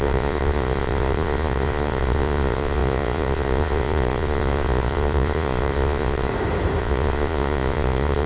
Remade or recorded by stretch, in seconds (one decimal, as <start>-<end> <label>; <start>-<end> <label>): 0.0-6.3 remade; 6.3-6.8 recorded; 6.8-8.3 remade